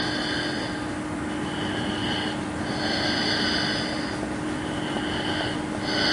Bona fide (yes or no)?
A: yes